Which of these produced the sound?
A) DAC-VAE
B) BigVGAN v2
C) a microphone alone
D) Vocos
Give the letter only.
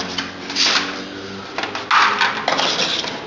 C